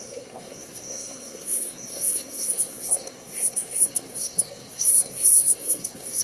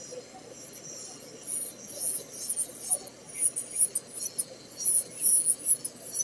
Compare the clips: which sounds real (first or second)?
second